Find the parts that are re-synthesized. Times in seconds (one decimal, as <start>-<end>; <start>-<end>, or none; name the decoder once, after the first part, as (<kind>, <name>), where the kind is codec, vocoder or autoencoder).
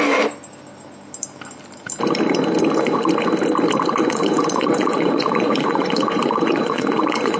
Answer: 4.0-7.4 (vocoder, Vocos)